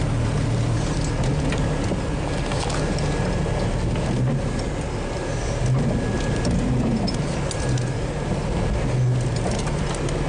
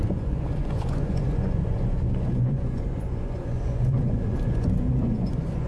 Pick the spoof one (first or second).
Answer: second